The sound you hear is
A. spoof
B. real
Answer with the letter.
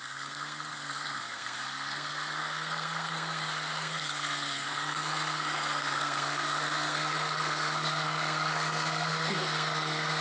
A